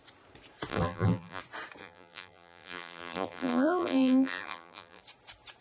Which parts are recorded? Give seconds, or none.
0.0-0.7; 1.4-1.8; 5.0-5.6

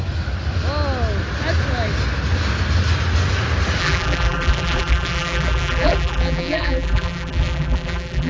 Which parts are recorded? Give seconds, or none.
0.0-3.8

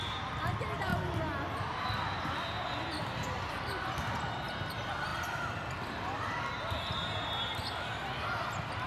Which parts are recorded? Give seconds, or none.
0.0-5.1; 5.9-8.9

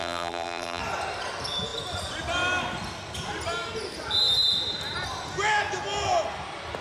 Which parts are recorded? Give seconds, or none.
0.8-6.8

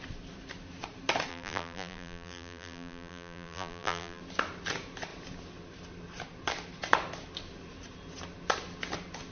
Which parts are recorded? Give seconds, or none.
0.0-1.3; 4.2-9.3

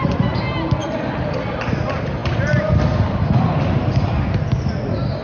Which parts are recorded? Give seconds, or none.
0.0-2.2; 3.6-5.2

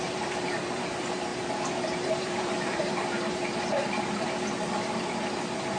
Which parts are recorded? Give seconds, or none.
none